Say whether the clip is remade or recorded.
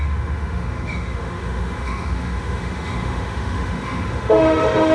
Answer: remade